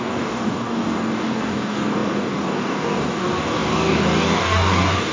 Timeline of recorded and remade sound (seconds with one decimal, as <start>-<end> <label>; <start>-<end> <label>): 0.0-5.1 remade